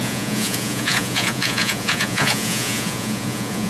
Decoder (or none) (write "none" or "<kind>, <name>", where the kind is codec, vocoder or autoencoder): vocoder, Vocos